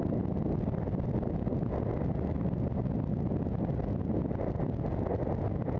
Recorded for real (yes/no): yes